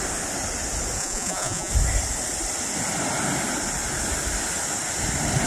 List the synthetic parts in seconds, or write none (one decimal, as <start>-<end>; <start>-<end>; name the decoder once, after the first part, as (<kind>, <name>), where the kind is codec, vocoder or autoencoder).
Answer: 1.0-1.7 (vocoder, Vocos)